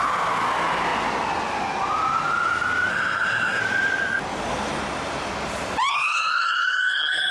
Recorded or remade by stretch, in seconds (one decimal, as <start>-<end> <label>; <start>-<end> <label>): 0.0-2.9 recorded; 2.9-3.6 remade; 3.6-5.9 recorded; 5.9-7.3 remade